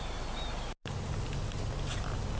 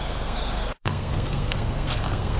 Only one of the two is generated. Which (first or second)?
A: second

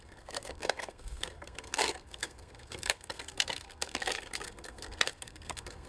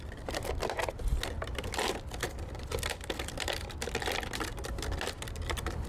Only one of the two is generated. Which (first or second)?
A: first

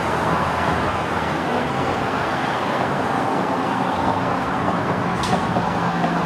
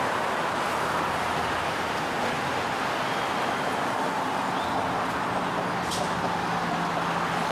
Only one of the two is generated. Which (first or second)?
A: first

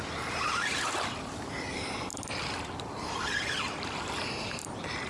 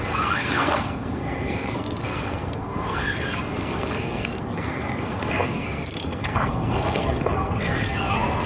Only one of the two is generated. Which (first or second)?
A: second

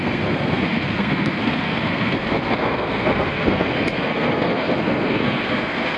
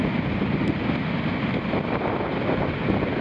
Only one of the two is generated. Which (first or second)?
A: first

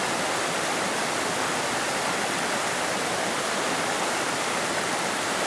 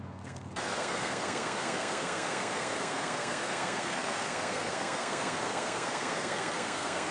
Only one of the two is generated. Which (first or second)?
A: second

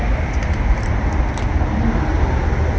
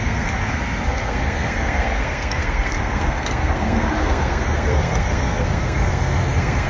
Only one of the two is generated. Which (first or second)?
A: second